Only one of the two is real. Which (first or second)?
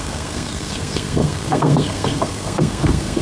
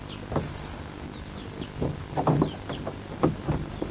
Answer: second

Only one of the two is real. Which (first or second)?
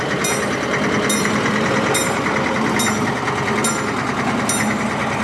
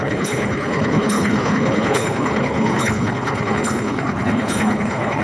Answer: first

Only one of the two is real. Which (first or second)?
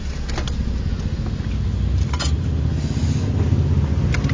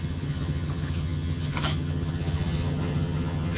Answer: first